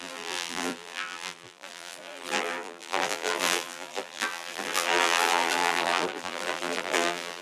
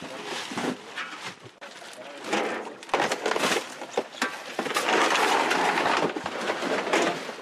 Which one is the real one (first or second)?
second